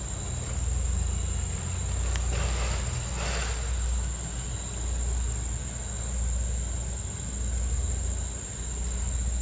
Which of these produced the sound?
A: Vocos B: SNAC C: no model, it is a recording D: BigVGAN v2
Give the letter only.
C